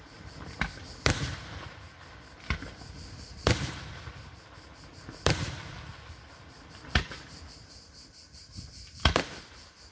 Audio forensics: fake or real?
fake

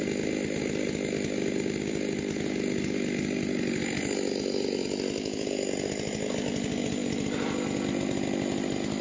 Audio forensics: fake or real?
real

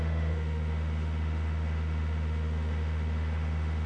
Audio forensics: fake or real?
fake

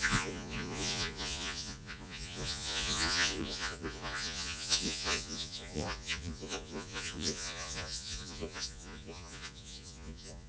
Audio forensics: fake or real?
fake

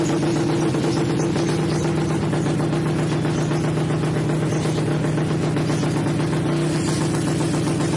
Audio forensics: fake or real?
real